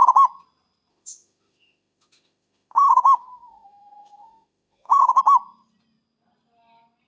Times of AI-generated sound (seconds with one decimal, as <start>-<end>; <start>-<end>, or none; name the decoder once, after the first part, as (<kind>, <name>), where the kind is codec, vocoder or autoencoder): 0.9-5.2 (autoencoder, DAC-VAE)